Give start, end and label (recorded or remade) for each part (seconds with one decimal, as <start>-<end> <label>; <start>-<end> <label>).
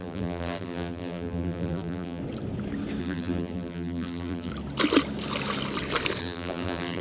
0.0-2.2 remade; 2.2-3.0 recorded; 3.0-4.5 remade; 4.5-6.2 recorded; 6.2-7.0 remade